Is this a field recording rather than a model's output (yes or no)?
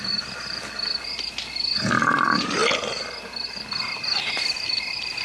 yes